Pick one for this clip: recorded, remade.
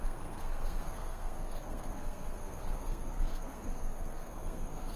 remade